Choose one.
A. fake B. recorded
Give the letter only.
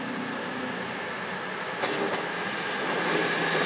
B